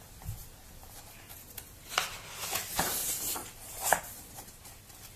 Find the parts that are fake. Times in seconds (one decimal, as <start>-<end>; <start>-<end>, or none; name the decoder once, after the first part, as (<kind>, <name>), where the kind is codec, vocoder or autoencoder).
none